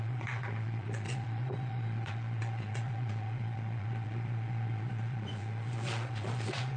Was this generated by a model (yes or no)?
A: yes